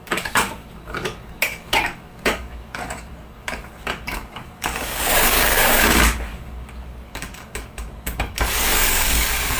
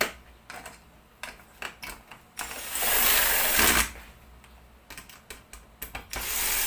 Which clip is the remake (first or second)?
first